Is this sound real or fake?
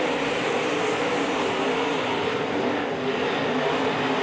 real